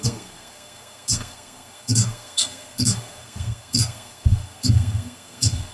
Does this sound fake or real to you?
fake